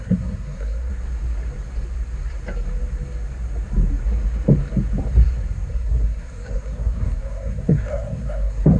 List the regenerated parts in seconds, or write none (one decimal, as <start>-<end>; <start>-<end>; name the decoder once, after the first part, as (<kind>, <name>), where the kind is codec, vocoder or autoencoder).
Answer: 0.0-0.9 (codec, SNAC); 5.7-8.8